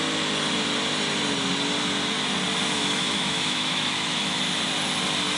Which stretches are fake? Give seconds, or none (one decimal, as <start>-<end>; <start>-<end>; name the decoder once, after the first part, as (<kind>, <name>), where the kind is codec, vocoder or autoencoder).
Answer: 2.8-4.4 (autoencoder, DAC-VAE)